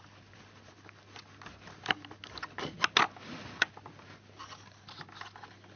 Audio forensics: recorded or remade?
recorded